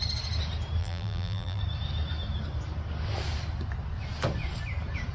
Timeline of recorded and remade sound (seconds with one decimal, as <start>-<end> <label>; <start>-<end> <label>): 0.0-0.8 recorded; 0.8-1.6 remade; 1.6-5.1 recorded